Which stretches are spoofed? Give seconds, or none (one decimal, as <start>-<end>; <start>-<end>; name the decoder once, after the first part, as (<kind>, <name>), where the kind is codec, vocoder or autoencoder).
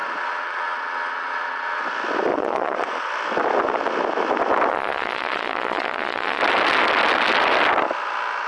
0.0-1.8 (vocoder, Vocos); 2.3-3.1; 4.7-6.4